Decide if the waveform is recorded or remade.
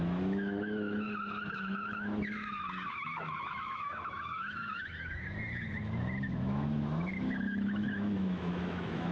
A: remade